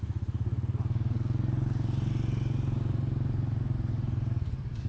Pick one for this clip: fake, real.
real